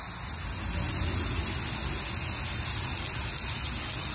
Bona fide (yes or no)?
yes